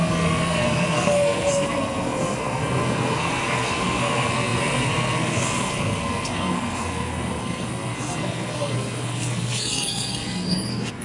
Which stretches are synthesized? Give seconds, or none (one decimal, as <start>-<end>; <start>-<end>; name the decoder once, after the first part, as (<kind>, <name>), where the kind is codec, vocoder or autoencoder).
0.0-11.0 (codec, SNAC)